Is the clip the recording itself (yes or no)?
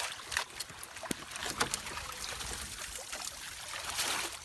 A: yes